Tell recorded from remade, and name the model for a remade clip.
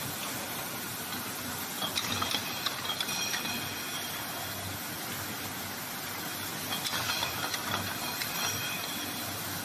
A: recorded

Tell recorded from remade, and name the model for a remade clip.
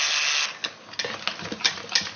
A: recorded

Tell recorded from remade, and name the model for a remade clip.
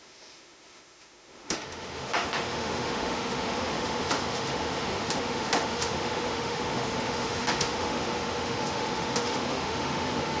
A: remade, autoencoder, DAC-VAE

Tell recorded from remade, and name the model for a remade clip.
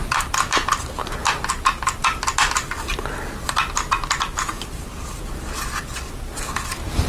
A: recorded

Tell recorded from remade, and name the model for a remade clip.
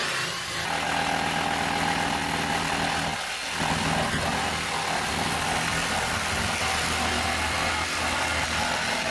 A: recorded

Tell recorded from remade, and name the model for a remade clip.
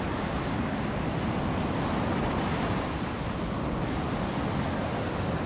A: recorded